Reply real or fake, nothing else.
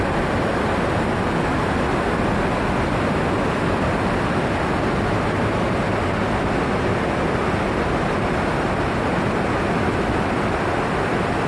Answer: real